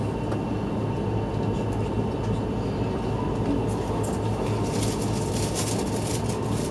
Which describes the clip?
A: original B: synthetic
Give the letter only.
A